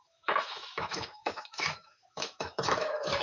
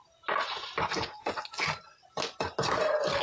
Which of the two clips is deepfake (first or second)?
first